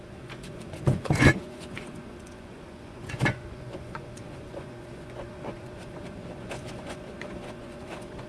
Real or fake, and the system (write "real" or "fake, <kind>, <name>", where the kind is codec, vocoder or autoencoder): fake, vocoder, Vocos